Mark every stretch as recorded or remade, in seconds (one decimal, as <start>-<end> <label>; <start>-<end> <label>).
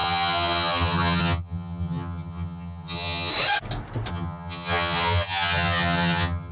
0.0-3.3 remade; 3.3-4.1 recorded; 4.1-6.5 remade